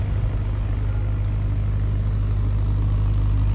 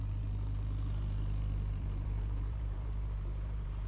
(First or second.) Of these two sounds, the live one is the first